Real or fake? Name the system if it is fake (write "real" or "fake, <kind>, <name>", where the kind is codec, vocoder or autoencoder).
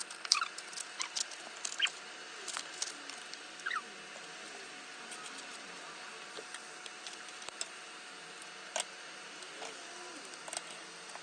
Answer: real